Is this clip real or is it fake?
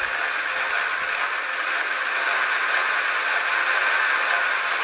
real